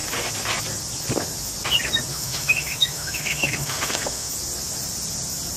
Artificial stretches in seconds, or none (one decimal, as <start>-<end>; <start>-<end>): 2.1-4.3